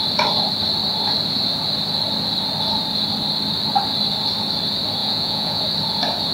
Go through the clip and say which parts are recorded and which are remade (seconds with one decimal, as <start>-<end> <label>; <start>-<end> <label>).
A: 0.0-5.0 recorded; 5.0-5.6 remade; 5.6-6.3 recorded